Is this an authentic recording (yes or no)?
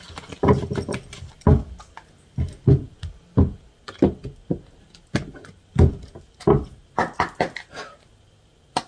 yes